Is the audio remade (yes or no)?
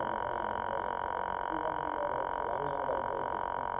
no